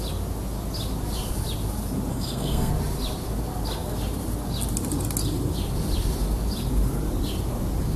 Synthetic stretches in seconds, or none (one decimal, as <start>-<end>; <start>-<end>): 2.1-2.7